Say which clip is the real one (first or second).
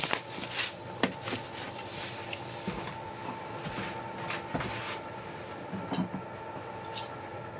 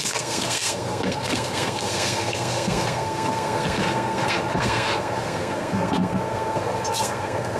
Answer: first